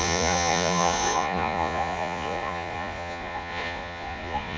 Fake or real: fake